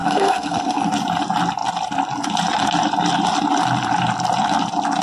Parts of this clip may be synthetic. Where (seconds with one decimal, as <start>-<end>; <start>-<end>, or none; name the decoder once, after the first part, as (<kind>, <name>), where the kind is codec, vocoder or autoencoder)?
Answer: 0.0-0.9 (codec, SNAC)